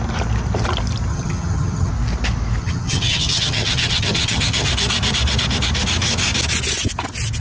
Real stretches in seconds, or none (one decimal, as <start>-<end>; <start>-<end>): 0.0-1.1; 1.9-2.6; 4.7-7.4